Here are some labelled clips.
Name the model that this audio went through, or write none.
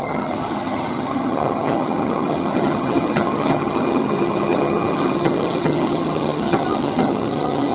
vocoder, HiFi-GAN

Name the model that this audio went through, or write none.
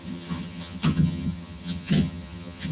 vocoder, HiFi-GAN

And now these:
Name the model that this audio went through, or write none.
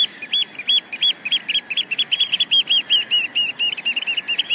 none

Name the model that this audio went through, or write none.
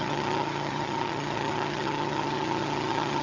vocoder, HiFi-GAN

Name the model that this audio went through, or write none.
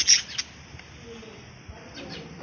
none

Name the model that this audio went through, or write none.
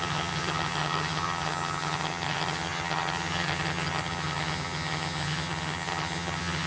vocoder, HiFi-GAN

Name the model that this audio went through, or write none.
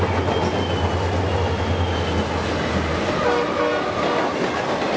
none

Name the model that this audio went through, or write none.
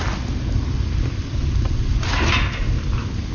none